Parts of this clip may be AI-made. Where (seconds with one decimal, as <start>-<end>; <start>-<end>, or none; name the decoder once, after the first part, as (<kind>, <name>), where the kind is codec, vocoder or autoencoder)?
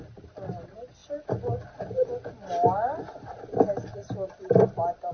none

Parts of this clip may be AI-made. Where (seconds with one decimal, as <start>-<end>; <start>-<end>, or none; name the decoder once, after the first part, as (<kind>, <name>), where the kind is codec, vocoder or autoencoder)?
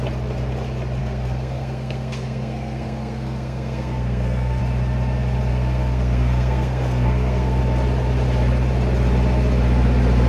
1.0-4.6 (codec, SNAC); 5.5-7.6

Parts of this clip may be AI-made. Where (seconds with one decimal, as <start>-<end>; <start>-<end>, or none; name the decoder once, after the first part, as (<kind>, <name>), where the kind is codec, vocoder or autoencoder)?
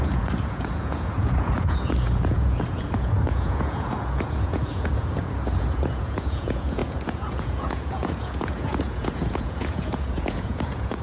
0.0-11.0 (vocoder, Vocos)